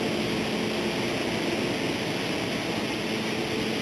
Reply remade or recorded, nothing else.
recorded